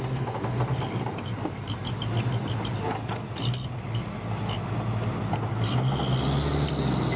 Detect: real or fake real